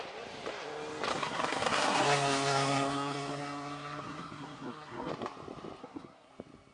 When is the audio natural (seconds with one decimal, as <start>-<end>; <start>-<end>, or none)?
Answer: 0.0-1.1; 5.1-5.8; 6.3-6.7